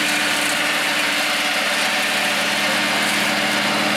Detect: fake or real real